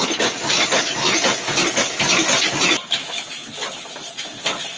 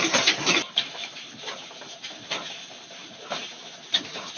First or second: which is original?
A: first